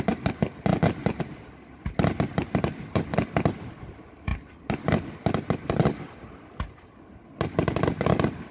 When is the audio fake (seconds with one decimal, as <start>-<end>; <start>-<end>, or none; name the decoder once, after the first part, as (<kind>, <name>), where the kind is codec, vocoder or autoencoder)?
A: none